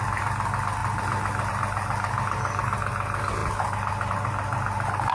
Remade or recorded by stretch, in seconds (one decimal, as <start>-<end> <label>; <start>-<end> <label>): 0.0-5.1 recorded